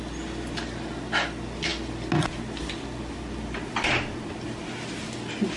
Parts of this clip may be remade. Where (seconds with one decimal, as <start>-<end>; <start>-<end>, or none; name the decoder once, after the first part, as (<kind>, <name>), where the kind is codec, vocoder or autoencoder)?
none